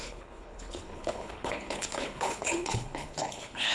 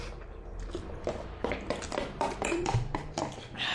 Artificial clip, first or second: first